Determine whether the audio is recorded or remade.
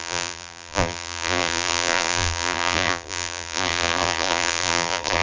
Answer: remade